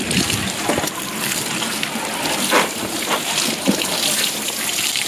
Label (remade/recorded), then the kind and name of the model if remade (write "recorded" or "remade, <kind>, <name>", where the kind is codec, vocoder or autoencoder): recorded